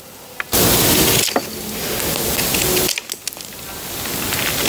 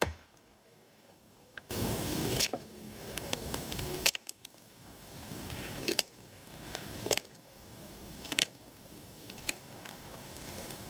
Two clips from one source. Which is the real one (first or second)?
first